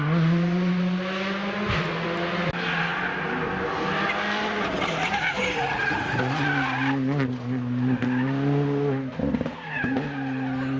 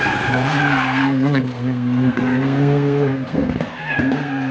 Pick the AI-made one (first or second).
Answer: second